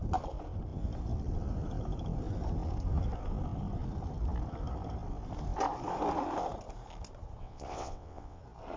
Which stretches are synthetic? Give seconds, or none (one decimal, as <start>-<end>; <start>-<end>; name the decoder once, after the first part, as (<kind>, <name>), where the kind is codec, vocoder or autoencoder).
7.4-8.4 (vocoder, WaveNeXt)